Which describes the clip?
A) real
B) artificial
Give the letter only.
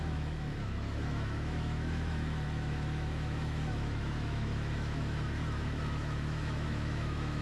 B